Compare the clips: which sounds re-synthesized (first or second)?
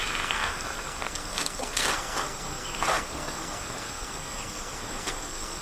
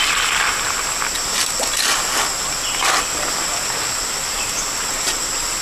first